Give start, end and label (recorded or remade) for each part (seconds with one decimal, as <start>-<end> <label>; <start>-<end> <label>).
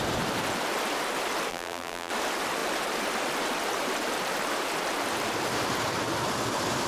0.0-1.5 recorded; 1.5-2.1 remade; 2.1-6.9 recorded